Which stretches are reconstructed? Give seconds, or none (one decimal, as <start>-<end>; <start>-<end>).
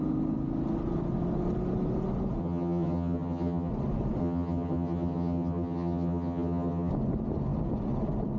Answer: 2.4-3.7; 4.2-6.9